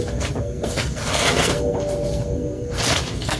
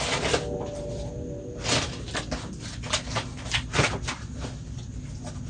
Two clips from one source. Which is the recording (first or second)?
second